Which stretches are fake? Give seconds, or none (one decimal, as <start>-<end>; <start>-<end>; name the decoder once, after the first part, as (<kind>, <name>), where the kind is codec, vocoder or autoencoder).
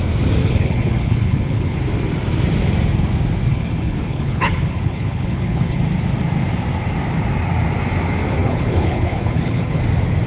0.4-1.8 (codec, HILCodec); 3.5-5.8; 8.4-9.8